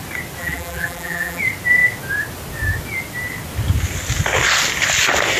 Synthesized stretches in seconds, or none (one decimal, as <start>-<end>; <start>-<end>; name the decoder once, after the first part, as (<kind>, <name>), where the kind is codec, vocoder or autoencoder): 0.4-1.4 (vocoder, BigVGAN v2)